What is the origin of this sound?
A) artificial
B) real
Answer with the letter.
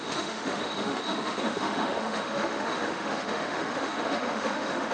A